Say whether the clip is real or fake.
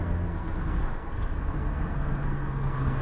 fake